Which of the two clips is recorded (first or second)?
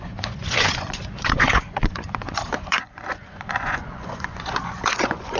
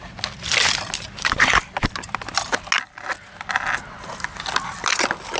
second